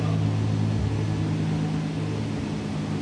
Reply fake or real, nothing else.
real